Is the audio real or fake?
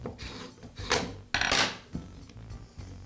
real